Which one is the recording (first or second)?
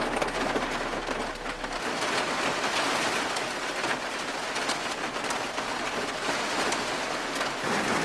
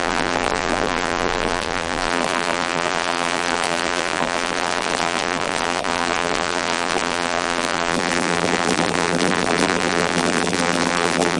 first